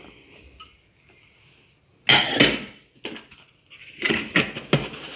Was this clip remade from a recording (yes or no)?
no